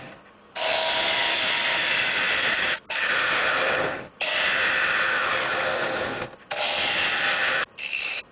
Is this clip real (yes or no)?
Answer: yes